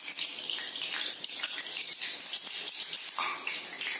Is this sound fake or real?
real